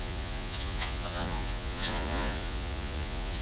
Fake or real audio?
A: fake